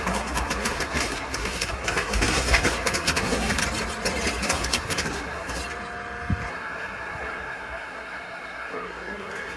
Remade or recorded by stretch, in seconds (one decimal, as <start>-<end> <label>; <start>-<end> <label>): 0.0-3.6 remade; 3.6-4.4 recorded; 4.4-5.6 remade; 5.6-6.5 recorded; 6.5-9.6 remade